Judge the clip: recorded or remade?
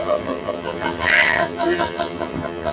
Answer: remade